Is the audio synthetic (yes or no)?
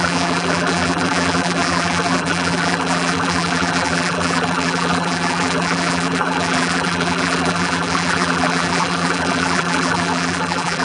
yes